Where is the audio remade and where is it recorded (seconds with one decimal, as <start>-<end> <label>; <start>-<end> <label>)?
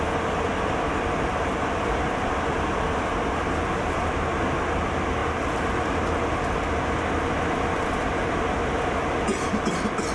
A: 0.0-10.1 recorded